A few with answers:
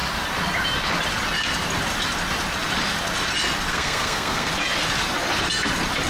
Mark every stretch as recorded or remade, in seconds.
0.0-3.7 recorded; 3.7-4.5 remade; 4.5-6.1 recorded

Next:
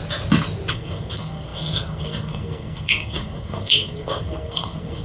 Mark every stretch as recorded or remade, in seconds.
0.0-0.7 recorded; 0.7-5.0 remade